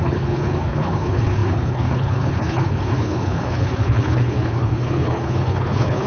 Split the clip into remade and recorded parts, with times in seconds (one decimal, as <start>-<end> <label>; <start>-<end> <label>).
0.0-6.1 remade